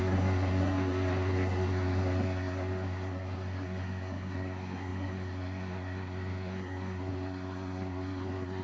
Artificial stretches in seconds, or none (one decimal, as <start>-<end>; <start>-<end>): 0.0-8.6